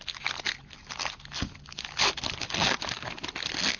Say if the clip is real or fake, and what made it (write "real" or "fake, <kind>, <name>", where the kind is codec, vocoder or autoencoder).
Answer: real